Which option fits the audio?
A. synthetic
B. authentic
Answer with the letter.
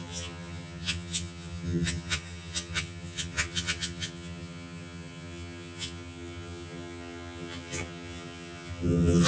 A